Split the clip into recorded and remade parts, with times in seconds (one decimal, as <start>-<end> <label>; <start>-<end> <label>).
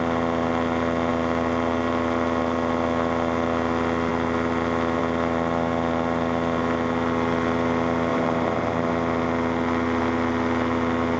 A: 0.0-8.1 recorded; 8.1-8.9 remade; 8.9-11.2 recorded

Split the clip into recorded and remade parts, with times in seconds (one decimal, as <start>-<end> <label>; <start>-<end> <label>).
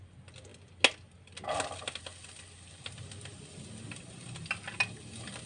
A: 0.0-5.5 recorded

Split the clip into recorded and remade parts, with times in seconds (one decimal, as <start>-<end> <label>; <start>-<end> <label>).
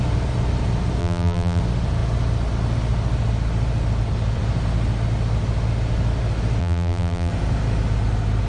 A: 0.0-1.0 recorded; 1.0-1.6 remade; 1.6-6.6 recorded; 6.6-7.3 remade; 7.3-8.5 recorded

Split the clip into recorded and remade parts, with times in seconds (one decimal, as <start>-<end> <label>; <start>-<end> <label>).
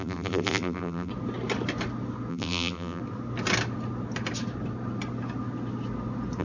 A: 0.0-1.1 remade; 1.1-2.3 recorded; 2.3-3.0 remade; 3.0-6.4 recorded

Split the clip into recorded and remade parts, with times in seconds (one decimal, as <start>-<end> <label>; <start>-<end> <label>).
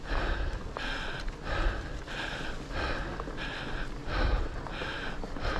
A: 0.0-4.0 recorded; 4.0-5.6 remade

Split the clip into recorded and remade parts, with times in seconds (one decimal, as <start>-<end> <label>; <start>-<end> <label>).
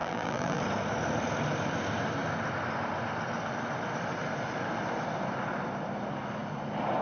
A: 0.0-0.6 remade; 0.6-7.0 recorded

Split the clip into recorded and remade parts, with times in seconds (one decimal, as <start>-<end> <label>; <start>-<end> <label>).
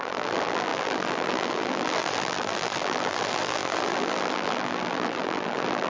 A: 0.0-5.9 remade